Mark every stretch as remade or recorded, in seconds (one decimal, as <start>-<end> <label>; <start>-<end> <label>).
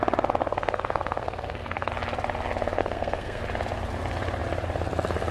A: 0.0-0.4 recorded; 0.4-1.9 remade; 1.9-2.8 recorded; 2.8-3.4 remade; 3.4-5.3 recorded